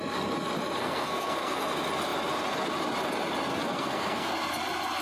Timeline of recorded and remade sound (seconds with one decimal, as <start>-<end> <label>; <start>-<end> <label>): 0.0-0.8 recorded; 0.8-1.6 remade; 1.6-3.5 recorded; 3.5-4.3 remade; 4.3-5.0 recorded